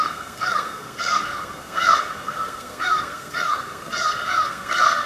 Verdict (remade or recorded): remade